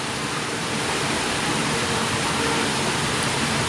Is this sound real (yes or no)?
yes